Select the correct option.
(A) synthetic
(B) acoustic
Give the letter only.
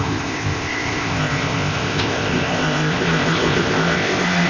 A